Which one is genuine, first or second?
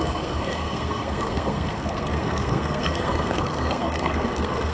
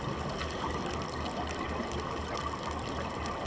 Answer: second